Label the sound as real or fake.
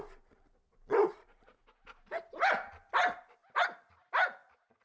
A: real